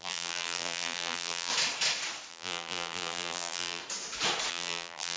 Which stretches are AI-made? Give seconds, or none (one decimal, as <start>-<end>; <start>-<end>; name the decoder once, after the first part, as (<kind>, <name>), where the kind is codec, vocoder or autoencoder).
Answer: 0.0-1.5 (vocoder, BigVGAN v2); 2.3-3.8; 4.5-5.2